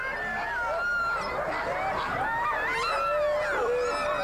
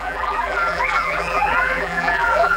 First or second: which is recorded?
first